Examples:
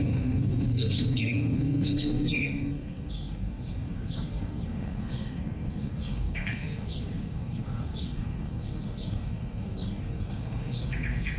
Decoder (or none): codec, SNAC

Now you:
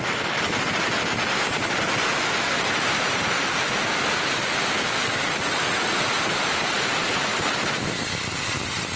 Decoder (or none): none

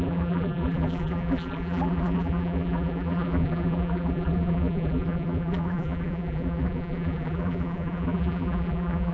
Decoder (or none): vocoder, BigVGAN v2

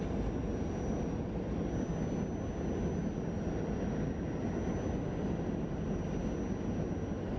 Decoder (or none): none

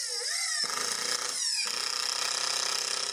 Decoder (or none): none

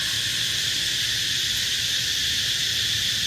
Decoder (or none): none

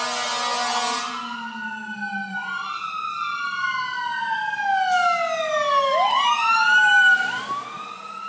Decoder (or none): none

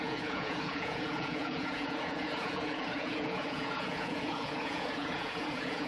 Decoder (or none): vocoder, Vocos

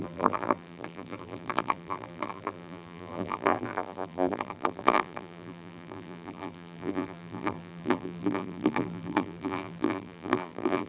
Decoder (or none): vocoder, BigVGAN v2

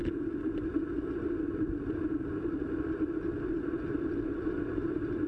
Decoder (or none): vocoder, BigVGAN v2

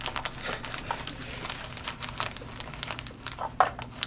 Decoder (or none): none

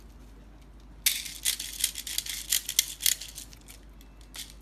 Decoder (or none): none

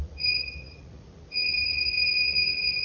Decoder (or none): vocoder, Vocos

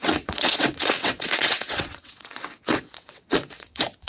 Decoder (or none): vocoder, WaveNeXt